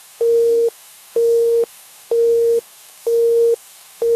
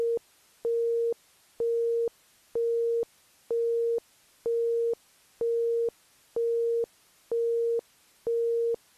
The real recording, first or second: second